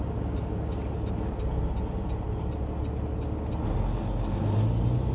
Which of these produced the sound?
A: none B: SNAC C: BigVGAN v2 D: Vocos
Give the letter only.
A